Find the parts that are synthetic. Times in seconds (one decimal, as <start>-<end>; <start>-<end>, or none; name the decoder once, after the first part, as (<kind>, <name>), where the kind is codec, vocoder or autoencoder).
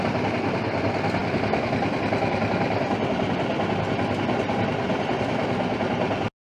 none